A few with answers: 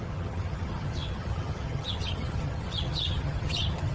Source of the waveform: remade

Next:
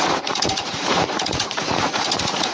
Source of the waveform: remade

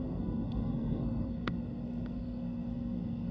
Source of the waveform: remade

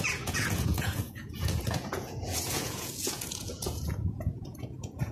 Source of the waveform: remade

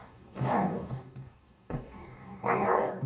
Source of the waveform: remade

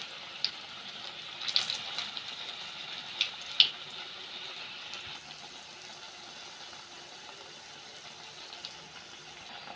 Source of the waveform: recorded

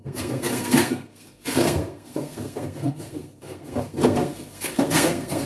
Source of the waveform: remade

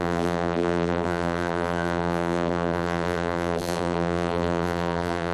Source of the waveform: remade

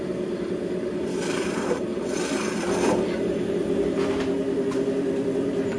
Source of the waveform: remade